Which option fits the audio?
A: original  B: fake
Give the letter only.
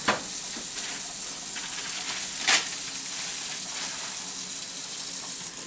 A